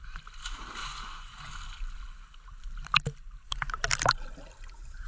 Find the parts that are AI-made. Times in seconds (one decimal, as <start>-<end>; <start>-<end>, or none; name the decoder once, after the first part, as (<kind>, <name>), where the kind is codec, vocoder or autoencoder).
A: 0.8-1.5 (vocoder, Vocos)